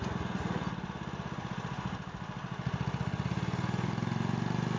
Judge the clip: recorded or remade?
recorded